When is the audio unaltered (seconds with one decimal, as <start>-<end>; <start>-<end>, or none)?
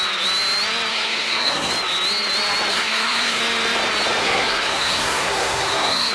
0.0-0.9; 1.7-2.7; 3.4-4.2